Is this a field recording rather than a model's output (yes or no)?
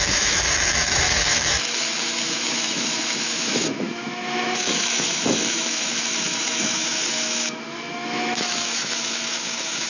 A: no